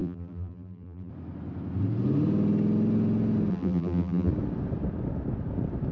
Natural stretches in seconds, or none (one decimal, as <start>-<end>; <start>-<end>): 1.1-3.5; 4.3-5.9